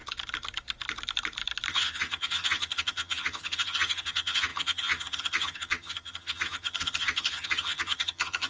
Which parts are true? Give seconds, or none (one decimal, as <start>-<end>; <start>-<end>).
0.0-1.7

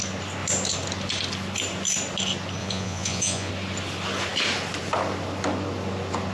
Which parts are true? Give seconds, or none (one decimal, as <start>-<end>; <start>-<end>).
0.0-2.6; 3.5-6.3

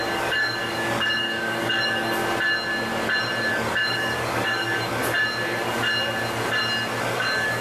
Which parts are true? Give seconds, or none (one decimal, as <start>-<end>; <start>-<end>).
2.2-3.5; 5.0-7.0

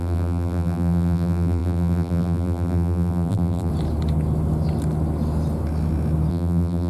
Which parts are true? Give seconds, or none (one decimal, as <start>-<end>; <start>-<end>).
3.7-6.3

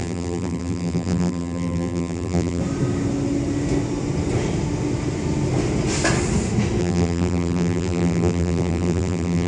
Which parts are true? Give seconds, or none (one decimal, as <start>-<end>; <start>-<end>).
2.6-6.8

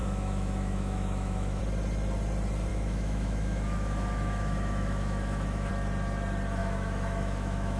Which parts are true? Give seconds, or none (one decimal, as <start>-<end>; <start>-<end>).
1.6-2.7; 5.7-6.6

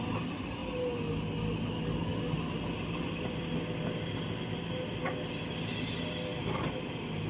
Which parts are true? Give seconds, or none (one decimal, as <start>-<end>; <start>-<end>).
0.0-7.3